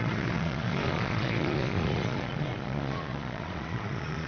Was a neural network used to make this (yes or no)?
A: yes